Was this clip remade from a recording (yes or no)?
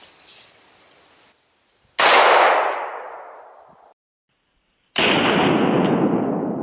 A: no